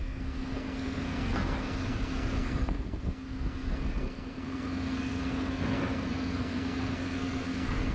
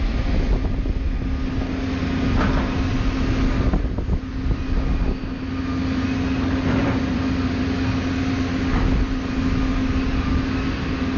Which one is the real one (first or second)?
second